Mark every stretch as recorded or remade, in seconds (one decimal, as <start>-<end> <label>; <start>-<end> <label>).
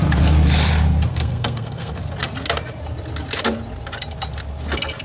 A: 0.0-1.1 recorded; 1.1-2.0 remade; 2.0-5.0 recorded